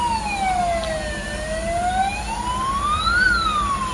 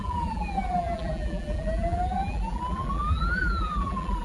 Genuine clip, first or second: first